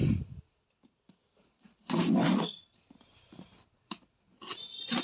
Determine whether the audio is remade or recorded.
recorded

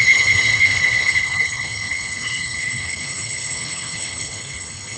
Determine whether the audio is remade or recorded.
remade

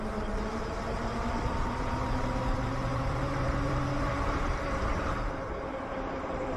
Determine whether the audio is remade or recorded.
remade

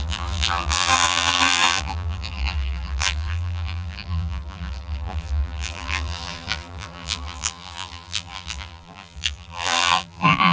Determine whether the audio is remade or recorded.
remade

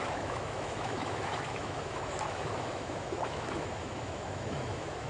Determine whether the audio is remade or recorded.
remade